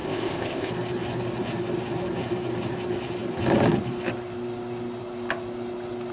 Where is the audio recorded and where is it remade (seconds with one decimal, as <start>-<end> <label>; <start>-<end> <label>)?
0.0-0.7 remade; 0.7-6.1 recorded